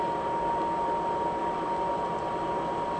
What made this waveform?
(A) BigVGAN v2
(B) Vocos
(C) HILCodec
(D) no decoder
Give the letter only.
D